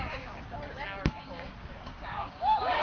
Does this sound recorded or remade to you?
remade